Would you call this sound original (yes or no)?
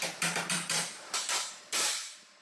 no